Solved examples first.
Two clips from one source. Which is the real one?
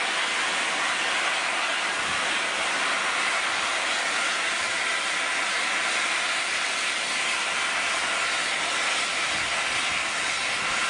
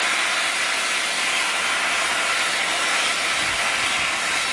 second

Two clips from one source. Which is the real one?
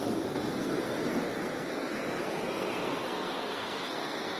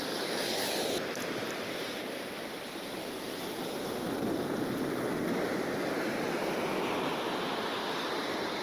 second